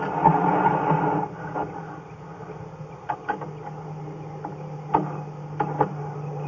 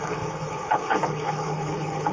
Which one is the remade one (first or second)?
second